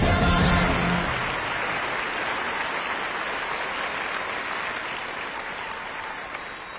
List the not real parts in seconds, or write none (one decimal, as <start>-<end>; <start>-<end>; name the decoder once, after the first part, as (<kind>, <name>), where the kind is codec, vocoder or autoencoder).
none